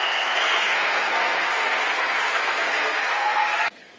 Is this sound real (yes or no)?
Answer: no